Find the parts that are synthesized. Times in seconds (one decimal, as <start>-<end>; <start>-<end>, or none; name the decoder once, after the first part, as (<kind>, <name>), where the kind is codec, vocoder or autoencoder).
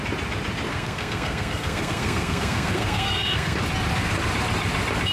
0.7-3.6 (codec, SNAC)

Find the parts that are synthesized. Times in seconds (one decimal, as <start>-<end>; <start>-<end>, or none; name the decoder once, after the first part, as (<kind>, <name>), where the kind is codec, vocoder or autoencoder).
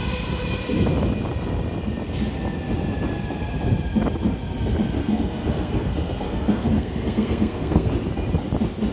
5.0-7.9 (codec, SNAC)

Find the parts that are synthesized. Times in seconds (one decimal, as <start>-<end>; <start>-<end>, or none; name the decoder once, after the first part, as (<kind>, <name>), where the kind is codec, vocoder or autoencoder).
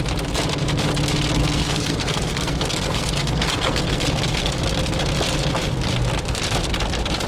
1.4-4.5 (codec, SNAC)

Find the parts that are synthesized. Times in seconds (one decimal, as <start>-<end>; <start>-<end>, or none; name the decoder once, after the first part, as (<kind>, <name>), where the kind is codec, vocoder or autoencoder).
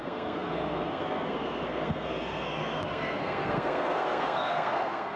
0.0-5.2 (codec, SNAC)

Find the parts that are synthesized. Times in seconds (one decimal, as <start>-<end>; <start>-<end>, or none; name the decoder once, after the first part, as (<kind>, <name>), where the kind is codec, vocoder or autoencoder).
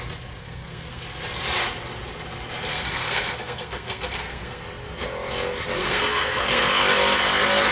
0.4-1.0 (codec, SNAC); 2.7-4.6; 5.8-6.6